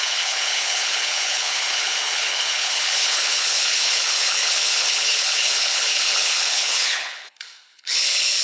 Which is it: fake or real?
fake